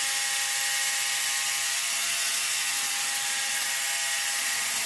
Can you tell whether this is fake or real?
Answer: real